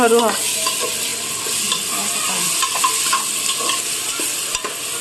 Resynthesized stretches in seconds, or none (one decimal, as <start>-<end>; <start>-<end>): none